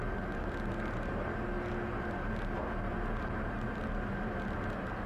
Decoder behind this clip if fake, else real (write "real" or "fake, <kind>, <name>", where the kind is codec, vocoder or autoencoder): real